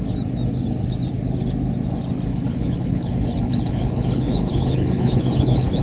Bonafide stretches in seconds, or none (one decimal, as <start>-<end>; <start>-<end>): 0.0-2.3